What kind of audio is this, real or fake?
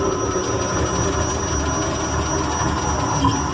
real